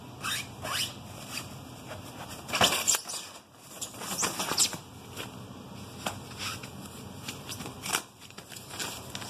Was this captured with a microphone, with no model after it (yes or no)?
yes